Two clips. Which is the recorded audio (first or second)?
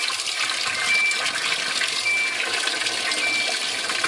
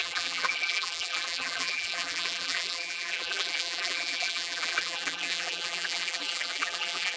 first